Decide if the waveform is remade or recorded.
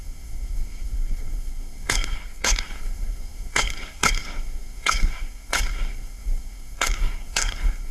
remade